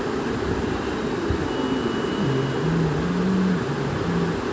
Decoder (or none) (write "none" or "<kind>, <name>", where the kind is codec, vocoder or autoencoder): none